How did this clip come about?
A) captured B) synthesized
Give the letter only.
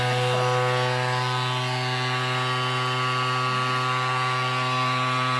A